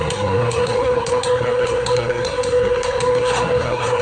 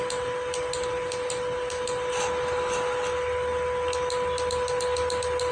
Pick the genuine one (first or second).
second